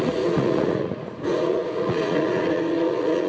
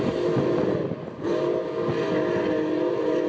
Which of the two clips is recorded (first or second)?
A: second